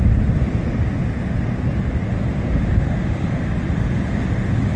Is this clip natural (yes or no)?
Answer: yes